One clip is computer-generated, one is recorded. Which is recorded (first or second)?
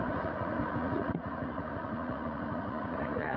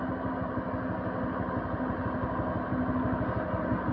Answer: second